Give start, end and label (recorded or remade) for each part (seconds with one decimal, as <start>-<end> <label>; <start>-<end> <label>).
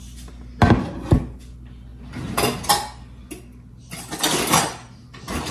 0.0-5.5 recorded